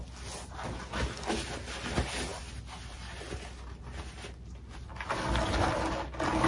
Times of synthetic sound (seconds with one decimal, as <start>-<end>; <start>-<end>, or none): none

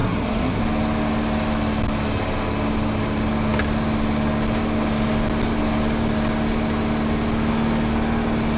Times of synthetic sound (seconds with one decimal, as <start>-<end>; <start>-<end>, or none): 0.0-0.6